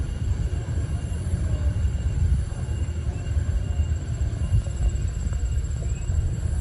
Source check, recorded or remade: remade